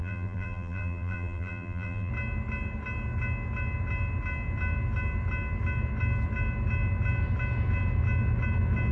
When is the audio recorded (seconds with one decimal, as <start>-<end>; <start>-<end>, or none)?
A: 2.1-8.9